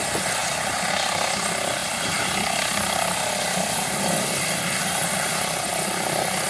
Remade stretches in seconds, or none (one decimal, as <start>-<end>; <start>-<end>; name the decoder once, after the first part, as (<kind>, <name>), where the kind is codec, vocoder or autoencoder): 0.4-0.9 (vocoder, BigVGAN v2); 1.8-5.7